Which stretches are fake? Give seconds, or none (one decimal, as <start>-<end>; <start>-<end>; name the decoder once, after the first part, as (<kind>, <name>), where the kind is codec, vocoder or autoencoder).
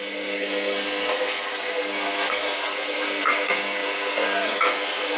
0.0-5.2 (codec, SNAC)